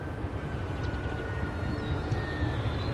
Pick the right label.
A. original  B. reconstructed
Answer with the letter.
A